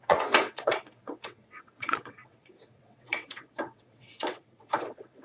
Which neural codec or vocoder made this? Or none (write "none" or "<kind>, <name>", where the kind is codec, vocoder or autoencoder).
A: vocoder, WaveNeXt